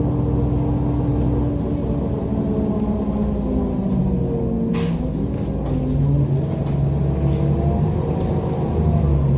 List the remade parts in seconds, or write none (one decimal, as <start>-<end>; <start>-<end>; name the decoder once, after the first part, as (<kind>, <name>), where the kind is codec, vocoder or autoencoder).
none